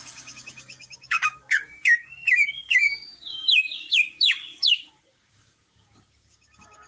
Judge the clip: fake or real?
fake